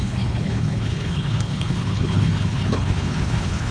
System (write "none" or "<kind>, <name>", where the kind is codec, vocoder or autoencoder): codec, HILCodec